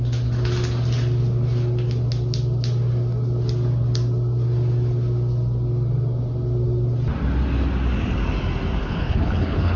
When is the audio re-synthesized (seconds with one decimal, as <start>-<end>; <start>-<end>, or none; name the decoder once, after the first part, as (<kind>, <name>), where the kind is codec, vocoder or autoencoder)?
8.8-9.8 (codec, HILCodec)